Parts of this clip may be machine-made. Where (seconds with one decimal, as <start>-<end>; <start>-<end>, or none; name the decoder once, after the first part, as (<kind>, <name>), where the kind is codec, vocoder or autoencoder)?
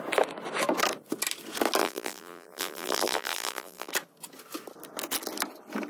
1.8-3.9 (vocoder, BigVGAN v2)